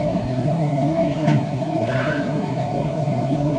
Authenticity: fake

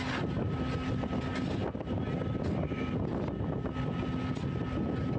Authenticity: real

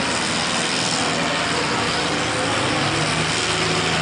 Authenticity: real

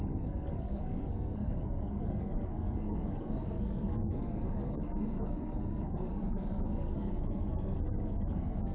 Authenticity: fake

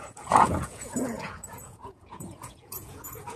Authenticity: fake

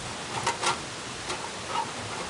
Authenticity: real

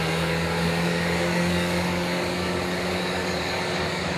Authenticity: fake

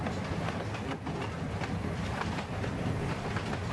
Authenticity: real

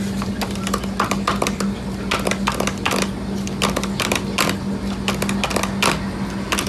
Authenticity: real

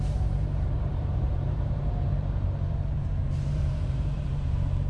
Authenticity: fake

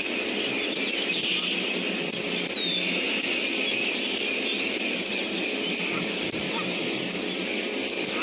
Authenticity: real